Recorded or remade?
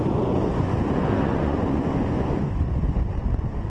remade